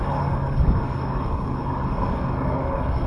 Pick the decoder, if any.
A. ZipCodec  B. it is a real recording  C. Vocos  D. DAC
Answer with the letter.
D